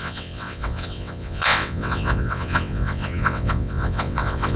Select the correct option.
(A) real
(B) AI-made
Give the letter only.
B